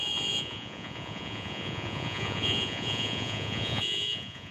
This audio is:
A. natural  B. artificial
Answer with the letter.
B